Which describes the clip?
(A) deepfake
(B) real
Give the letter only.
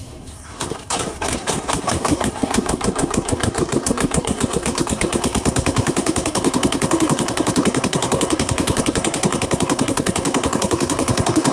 A